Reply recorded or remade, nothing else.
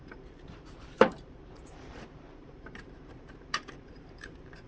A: remade